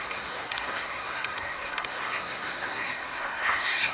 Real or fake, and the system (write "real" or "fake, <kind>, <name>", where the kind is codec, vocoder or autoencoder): fake, codec, SNAC